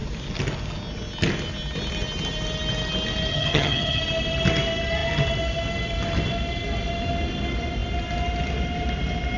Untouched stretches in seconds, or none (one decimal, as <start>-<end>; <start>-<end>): 0.0-3.3; 4.0-9.4